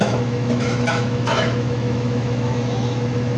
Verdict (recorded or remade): remade